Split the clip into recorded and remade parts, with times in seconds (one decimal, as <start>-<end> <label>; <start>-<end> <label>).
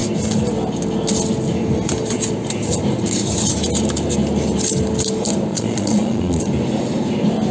0.0-5.5 recorded; 5.5-6.4 remade; 6.4-7.5 recorded